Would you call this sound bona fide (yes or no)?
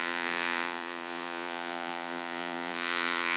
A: no